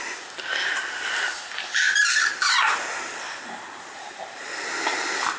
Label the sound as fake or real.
real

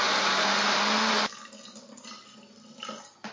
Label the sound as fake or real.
real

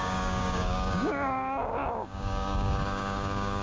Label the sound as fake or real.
fake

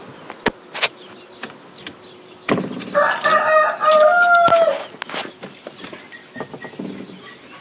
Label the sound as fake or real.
real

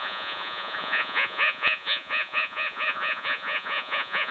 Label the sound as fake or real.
fake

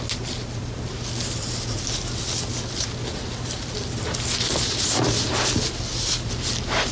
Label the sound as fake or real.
real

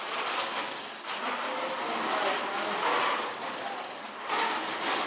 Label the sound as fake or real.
real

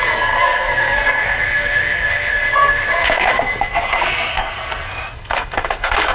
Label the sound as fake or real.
fake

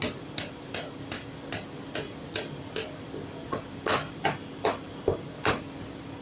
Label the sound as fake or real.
real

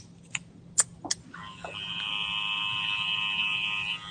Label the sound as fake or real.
real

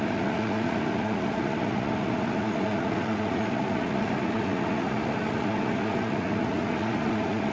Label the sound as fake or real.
fake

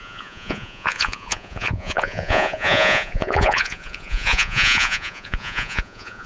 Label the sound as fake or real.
fake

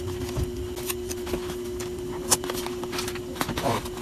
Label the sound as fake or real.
real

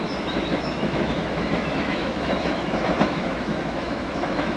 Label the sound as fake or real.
fake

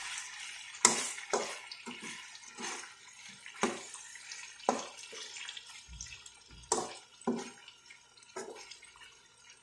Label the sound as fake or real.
real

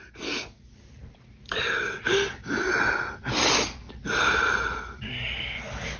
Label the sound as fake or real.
real